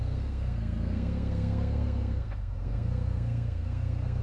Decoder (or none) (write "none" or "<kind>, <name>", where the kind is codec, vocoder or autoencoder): codec, SNAC